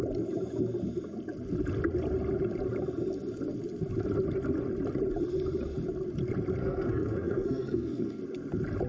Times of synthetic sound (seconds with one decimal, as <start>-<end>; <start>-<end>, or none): 6.6-8.2